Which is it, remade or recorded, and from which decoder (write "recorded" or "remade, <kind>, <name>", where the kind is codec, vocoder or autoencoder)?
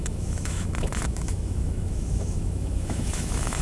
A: remade, autoencoder, DAC-VAE